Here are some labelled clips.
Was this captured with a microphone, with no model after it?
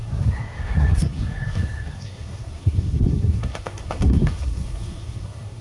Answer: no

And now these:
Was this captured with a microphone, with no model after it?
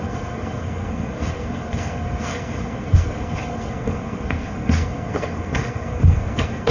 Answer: no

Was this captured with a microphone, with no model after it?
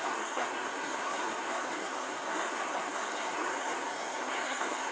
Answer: no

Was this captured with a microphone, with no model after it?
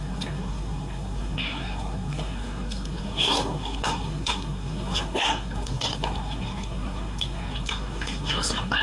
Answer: no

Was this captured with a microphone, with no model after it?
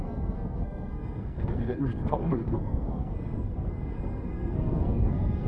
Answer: no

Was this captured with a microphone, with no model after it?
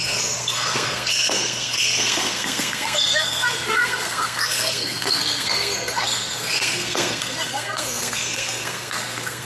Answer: no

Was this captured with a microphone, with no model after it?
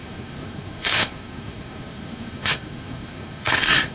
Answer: no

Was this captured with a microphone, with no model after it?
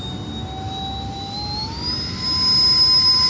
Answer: yes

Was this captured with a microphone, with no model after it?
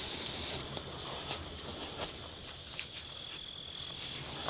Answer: yes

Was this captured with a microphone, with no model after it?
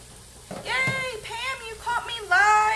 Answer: yes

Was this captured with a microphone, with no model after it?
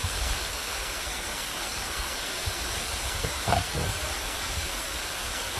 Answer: no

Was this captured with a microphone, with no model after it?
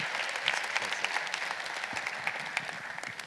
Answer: yes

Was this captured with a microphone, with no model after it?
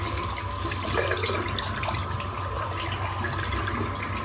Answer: yes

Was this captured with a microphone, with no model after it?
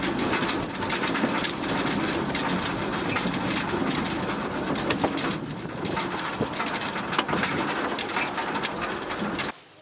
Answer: yes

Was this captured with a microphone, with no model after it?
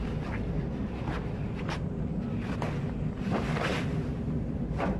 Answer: yes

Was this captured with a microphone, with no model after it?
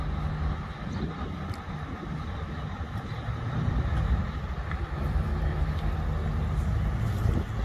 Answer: yes